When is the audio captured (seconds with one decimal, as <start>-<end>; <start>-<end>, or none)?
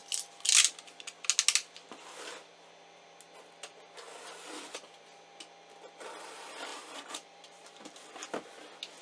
0.0-6.7; 8.1-9.0